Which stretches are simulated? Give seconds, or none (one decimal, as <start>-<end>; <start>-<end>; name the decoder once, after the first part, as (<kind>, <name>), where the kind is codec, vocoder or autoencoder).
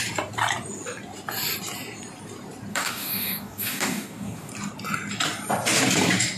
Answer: 2.7-4.5 (codec, DAC)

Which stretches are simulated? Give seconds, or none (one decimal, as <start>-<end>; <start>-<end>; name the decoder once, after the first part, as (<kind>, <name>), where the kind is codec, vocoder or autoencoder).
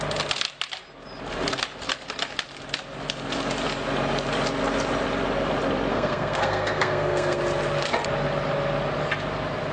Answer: 5.9-7.4 (codec, SNAC)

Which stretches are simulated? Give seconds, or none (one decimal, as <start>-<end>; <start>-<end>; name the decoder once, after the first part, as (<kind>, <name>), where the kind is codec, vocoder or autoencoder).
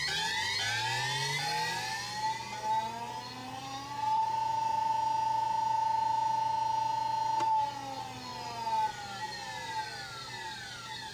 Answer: 3.4-4.9 (vocoder, BigVGAN v2)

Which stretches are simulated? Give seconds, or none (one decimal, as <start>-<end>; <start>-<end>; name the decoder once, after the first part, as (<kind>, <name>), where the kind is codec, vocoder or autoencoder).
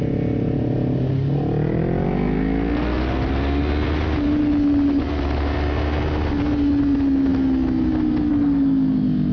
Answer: none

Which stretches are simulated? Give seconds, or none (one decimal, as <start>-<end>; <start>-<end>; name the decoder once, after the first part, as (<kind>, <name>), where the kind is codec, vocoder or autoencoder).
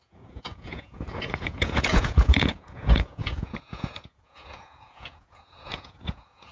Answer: 0.0-6.5 (vocoder, Vocos)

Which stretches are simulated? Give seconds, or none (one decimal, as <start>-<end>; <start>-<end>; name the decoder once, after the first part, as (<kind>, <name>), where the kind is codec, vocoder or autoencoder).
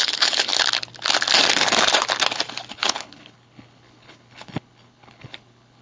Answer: 0.0-0.5 (codec, HILCodec); 2.7-5.8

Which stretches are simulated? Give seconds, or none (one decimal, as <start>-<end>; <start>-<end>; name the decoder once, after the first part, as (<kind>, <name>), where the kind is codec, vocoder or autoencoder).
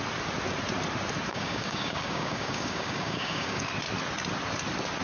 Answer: 1.3-3.7 (codec, DAC)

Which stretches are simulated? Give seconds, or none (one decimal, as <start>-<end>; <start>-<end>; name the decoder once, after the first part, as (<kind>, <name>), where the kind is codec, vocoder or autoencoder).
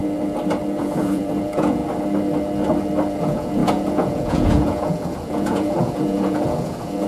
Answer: 0.8-1.8 (vocoder, Vocos); 3.1-7.1